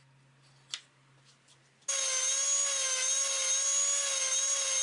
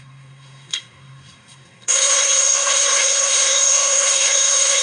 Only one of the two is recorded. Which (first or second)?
first